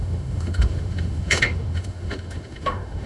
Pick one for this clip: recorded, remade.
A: remade